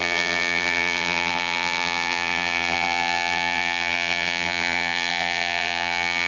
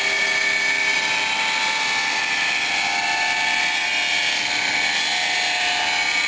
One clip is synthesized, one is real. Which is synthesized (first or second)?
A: first